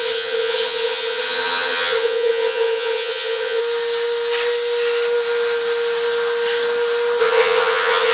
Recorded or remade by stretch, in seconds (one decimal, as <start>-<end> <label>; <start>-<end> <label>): 0.0-3.6 remade; 3.6-7.2 recorded; 7.2-8.1 remade